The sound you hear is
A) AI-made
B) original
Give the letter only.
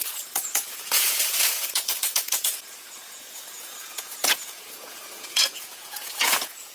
A